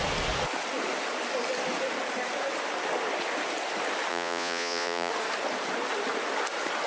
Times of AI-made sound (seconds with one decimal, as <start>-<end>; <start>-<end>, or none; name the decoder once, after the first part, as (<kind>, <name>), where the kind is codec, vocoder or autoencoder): 4.1-5.1 (vocoder, Vocos)